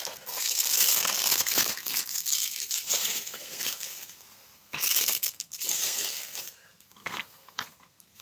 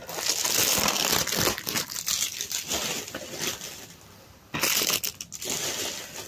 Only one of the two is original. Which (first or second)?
second